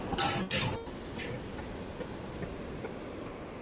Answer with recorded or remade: remade